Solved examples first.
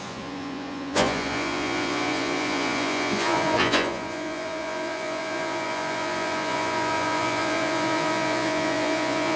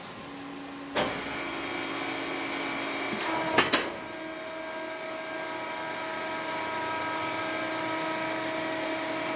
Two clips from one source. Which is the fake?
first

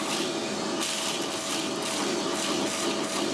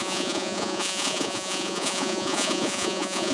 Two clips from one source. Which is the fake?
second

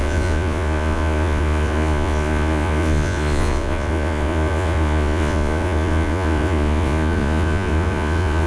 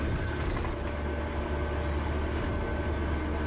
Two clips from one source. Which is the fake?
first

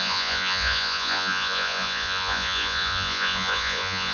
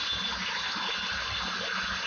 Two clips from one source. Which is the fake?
first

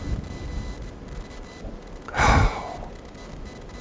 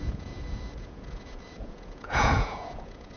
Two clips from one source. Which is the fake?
second